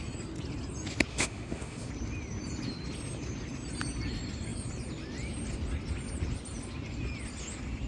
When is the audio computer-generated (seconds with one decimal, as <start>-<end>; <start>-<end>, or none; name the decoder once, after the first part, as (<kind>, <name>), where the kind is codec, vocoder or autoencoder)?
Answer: 1.1-1.9 (autoencoder, DAC-VAE)